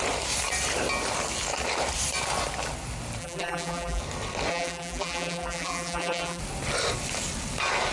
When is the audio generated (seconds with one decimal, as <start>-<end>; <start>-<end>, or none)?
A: 3.2-4.0; 4.5-6.4